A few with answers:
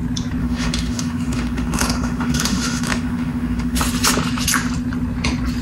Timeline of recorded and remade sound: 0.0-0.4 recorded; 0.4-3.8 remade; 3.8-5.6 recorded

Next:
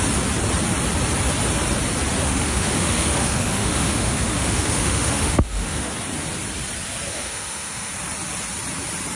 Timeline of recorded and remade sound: 0.0-2.2 recorded; 2.2-5.9 remade; 5.9-7.1 recorded; 7.1-7.9 remade; 7.9-9.2 recorded

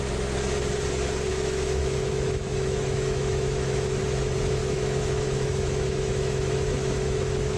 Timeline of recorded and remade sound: 0.0-1.3 recorded; 1.3-4.0 remade; 4.0-4.6 recorded; 4.6-7.6 remade

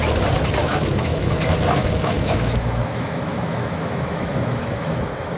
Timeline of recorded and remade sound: 0.0-0.6 recorded; 0.6-1.3 remade; 1.3-1.8 recorded; 1.8-5.0 remade; 5.0-5.4 recorded

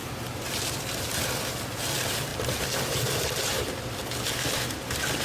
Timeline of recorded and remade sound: 0.0-5.2 recorded

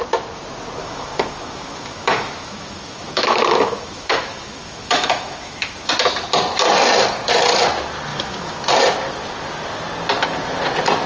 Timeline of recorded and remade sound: 0.0-0.8 recorded; 0.8-5.9 remade; 5.9-8.1 recorded; 8.1-8.6 remade; 8.6-11.1 recorded

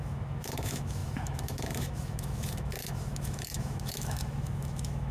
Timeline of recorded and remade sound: 0.0-5.1 remade